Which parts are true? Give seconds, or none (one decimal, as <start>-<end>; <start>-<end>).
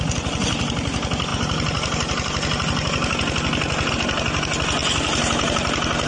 0.0-6.1